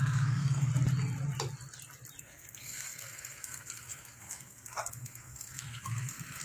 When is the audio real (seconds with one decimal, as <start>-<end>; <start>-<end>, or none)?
0.7-2.2